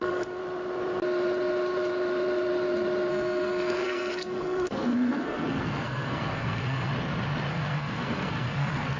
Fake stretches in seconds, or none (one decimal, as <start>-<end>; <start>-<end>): 0.0-0.4; 3.1-6.9; 7.5-9.0